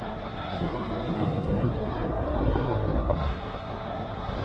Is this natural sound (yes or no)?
no